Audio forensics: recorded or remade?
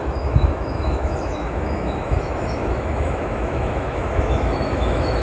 remade